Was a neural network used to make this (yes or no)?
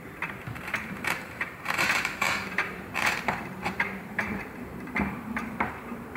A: yes